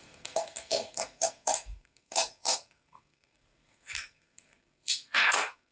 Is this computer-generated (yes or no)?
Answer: yes